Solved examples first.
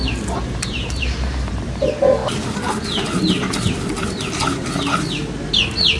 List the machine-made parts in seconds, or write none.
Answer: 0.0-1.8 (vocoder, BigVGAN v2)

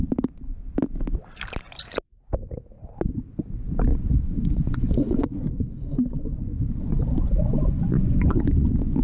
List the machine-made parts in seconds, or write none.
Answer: 3.9-9.0 (vocoder, Vocos)

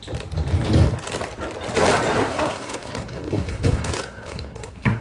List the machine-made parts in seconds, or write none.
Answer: 2.2-5.0 (codec, SNAC)